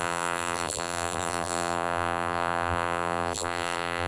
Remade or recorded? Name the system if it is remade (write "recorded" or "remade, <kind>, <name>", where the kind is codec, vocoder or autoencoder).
remade, vocoder, BigVGAN v2